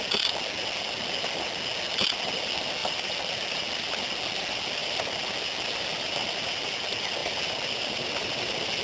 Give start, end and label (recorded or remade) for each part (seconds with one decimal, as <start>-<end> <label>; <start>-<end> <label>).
0.0-2.8 recorded; 2.8-4.0 remade; 4.0-4.8 recorded; 4.8-6.8 remade; 6.8-7.2 recorded; 7.2-8.8 remade